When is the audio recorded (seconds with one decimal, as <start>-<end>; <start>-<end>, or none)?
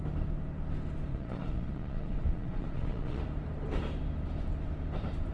0.0-1.1; 3.2-5.3